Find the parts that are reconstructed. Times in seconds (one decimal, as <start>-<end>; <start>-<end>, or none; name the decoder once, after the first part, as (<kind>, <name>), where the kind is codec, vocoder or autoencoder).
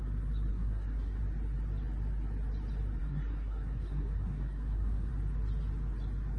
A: 0.5-1.2 (codec, SNAC); 3.0-5.1